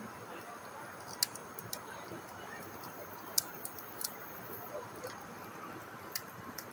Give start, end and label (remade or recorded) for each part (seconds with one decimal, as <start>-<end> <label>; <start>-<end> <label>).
0.0-1.4 recorded; 1.4-5.1 remade; 5.1-6.7 recorded